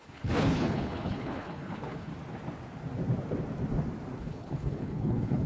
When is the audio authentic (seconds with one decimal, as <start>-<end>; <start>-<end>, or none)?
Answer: 2.1-4.2